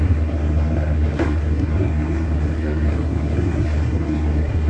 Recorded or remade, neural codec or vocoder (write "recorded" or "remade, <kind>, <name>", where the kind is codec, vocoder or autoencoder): remade, codec, SNAC